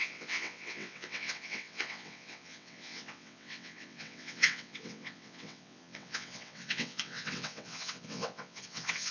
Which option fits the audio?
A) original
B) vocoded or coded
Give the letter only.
B